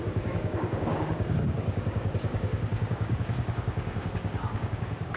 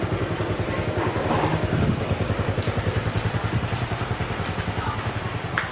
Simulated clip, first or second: first